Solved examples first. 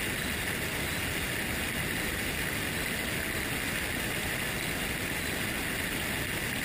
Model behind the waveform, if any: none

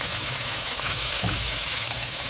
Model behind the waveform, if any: autoencoder, DAC-VAE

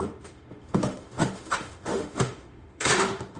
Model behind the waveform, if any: autoencoder, DAC-VAE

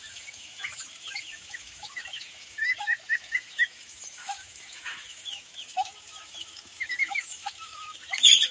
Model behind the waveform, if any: autoencoder, DAC-VAE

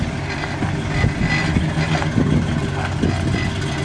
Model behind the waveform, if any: none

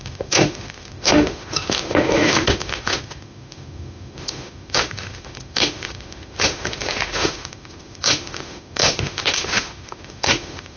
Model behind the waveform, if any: autoencoder, DAC-VAE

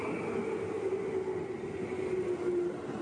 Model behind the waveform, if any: none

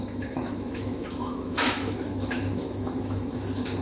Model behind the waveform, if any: autoencoder, DAC-VAE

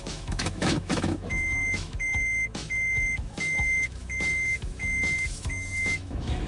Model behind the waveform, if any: autoencoder, DAC-VAE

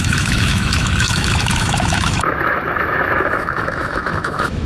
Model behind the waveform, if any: autoencoder, DAC-VAE